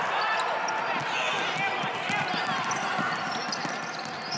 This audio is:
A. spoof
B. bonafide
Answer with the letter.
B